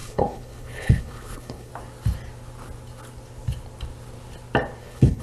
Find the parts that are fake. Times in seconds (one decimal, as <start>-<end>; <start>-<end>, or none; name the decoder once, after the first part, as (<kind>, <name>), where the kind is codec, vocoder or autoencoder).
0.0-1.7 (codec, HILCodec); 4.8-5.2